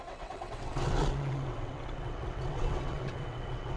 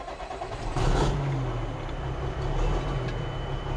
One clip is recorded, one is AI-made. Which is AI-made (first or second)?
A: first